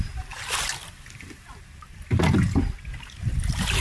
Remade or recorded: recorded